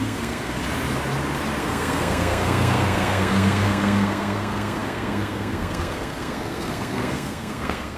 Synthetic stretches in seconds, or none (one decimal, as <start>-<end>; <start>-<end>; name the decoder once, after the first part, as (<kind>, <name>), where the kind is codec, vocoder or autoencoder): 0.0-0.6 (codec, SNAC); 1.6-8.0